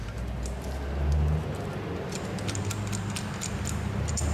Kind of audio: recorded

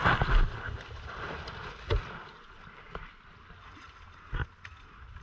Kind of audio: recorded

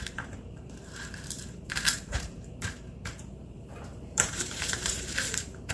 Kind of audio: remade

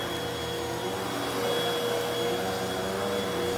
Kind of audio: recorded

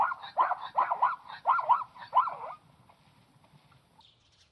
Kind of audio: recorded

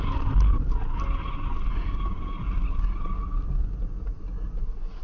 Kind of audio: recorded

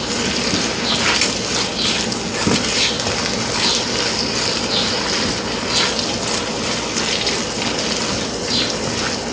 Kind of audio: recorded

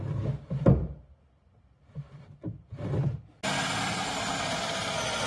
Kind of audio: recorded